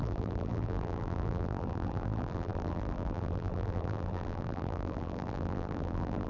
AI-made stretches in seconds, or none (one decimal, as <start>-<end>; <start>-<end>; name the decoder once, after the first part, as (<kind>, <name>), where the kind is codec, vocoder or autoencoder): 0.0-6.3 (vocoder, BigVGAN v2)